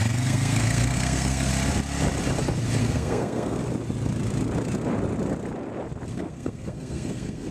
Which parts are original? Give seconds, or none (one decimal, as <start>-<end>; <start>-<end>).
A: 1.5-2.8; 3.6-6.1